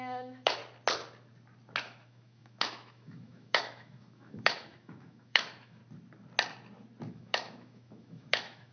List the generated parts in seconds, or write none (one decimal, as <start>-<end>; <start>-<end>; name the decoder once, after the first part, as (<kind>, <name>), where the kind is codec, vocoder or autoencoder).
0.0-0.6 (autoencoder, DAC-VAE); 1.8-5.8; 7.1-8.7